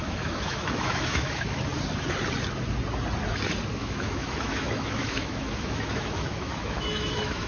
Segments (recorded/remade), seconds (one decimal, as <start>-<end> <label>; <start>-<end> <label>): 0.0-1.7 remade; 1.7-3.7 recorded; 3.7-7.5 remade